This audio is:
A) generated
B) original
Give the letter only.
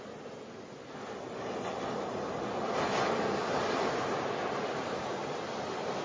B